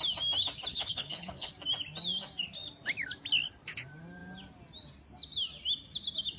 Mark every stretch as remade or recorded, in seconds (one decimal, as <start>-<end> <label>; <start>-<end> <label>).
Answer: 0.0-0.7 recorded; 0.7-1.5 remade; 1.5-6.4 recorded